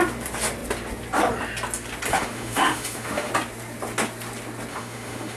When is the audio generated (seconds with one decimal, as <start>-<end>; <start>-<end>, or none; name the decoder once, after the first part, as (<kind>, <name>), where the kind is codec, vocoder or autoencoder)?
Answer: 2.1-3.3 (autoencoder, DAC-VAE); 4.7-5.4